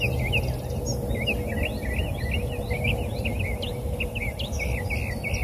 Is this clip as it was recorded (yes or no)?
yes